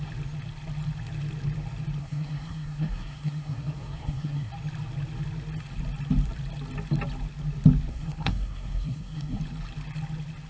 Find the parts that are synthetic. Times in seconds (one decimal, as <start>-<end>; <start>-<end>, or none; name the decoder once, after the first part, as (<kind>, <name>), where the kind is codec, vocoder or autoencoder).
2.0-4.5 (codec, SNAC); 7.9-9.4